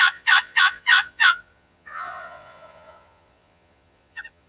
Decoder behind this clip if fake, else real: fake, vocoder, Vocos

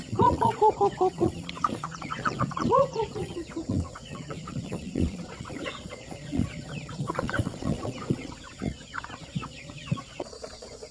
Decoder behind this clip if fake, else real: fake, vocoder, Vocos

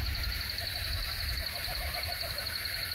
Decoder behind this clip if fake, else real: real